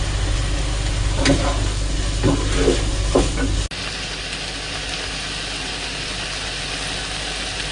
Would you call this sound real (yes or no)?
yes